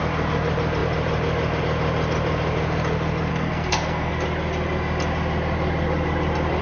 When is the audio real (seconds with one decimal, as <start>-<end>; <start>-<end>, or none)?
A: 0.0-3.3; 4.1-6.6